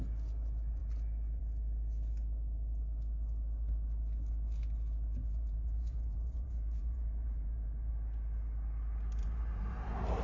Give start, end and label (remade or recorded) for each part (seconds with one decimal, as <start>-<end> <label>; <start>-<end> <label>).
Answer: 0.0-5.2 recorded; 5.2-7.9 remade; 7.9-9.2 recorded; 9.2-10.2 remade